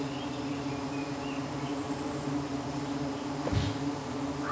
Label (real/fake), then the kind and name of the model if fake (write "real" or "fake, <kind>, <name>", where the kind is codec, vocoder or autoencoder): real